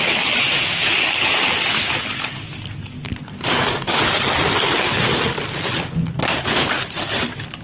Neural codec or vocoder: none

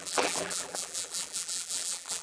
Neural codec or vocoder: vocoder, BigVGAN v2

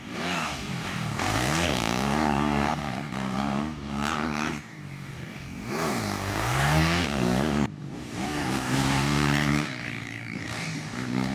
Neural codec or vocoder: codec, DAC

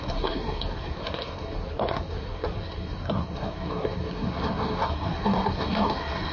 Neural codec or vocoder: codec, SNAC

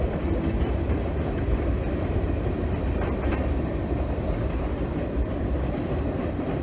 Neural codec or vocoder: vocoder, BigVGAN v2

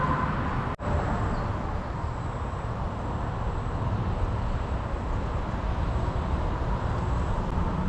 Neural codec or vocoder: none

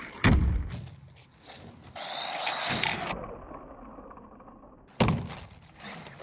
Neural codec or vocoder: none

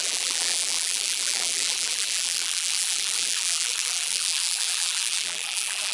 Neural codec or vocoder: vocoder, BigVGAN v2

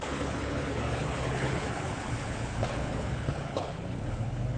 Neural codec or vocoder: codec, HILCodec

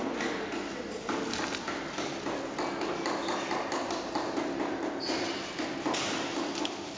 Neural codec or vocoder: none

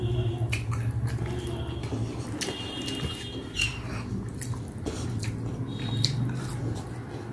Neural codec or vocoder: none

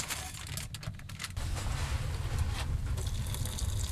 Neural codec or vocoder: none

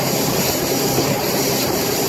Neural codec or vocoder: vocoder, BigVGAN v2